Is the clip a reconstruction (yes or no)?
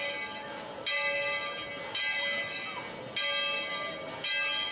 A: no